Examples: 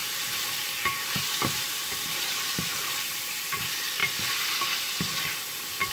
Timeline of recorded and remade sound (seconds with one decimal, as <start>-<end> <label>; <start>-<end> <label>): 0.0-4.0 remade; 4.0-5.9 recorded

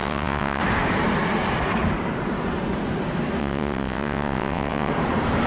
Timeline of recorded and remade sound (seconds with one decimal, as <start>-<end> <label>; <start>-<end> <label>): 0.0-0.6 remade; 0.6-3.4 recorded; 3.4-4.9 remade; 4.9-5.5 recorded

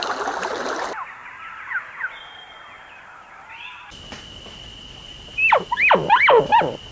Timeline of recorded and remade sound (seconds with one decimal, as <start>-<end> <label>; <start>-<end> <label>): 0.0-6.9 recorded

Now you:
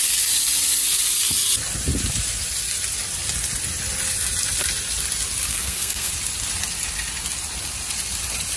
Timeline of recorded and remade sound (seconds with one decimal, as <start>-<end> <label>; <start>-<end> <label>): 0.0-5.5 recorded; 5.5-6.1 remade; 6.1-8.6 recorded

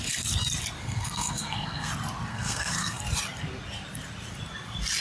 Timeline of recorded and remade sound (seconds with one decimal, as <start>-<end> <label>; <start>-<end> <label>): 0.0-0.8 recorded; 0.8-1.9 remade; 1.9-2.3 recorded; 2.3-3.0 remade; 3.0-5.0 recorded

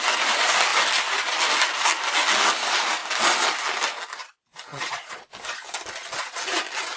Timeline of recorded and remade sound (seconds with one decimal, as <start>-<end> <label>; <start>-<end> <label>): 0.0-4.7 recorded; 4.7-5.3 remade; 5.3-7.0 recorded

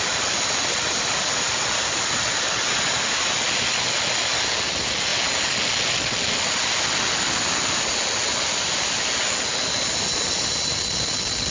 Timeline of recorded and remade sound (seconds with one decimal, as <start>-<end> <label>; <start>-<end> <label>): 0.0-11.5 recorded